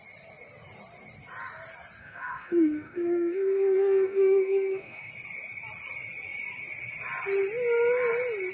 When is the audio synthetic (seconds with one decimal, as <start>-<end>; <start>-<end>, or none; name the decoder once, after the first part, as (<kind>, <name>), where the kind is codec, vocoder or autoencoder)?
2.0-5.1 (codec, SNAC)